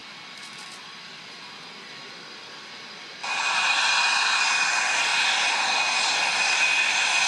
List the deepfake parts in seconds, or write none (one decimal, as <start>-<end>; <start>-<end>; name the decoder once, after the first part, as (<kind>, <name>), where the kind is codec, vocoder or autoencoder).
0.0-1.2 (vocoder, BigVGAN v2)